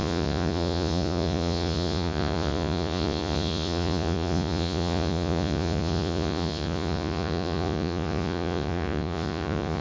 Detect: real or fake fake